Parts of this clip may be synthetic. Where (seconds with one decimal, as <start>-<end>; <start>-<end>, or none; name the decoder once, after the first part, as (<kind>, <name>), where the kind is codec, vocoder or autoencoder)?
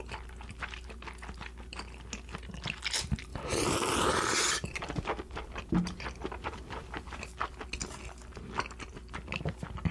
3.3-7.2 (vocoder, BigVGAN v2)